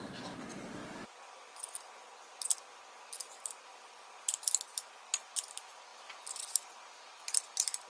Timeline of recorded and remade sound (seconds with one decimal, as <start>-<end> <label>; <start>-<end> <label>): 0.0-7.9 recorded